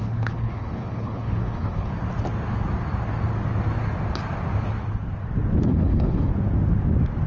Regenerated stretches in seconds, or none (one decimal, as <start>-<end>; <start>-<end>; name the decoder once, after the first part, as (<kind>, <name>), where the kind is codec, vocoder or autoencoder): 0.0-1.9 (codec, HILCodec); 5.6-6.3